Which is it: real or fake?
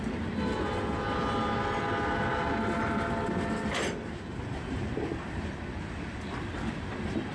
real